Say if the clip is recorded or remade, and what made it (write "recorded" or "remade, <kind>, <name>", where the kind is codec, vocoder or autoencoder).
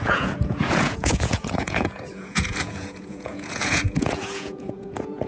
remade, vocoder, Vocos